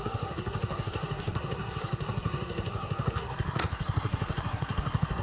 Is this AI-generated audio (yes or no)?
yes